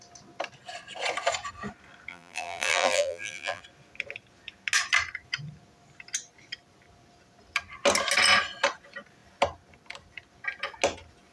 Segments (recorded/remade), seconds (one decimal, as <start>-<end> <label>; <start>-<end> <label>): 0.0-2.1 recorded; 2.1-3.6 remade; 3.6-11.3 recorded